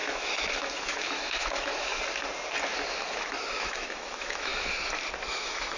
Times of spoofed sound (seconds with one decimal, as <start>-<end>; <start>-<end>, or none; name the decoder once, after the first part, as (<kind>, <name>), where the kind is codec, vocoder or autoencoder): 0.0-1.9 (autoencoder, DAC-VAE); 3.1-4.5; 5.3-5.8